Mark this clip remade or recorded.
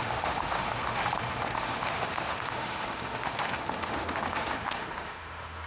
remade